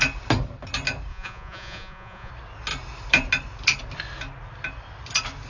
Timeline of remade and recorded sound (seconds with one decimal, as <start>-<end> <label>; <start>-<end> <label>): 0.0-1.1 recorded; 1.1-2.3 remade; 2.3-5.5 recorded